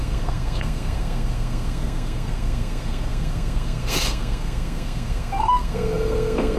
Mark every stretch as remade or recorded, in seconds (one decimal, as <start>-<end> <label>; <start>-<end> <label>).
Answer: 0.0-6.6 remade